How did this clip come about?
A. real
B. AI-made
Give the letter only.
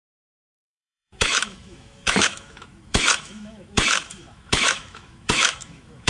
B